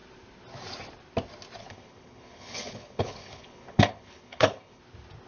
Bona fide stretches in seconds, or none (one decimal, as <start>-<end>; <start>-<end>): 0.0-1.6; 4.8-5.3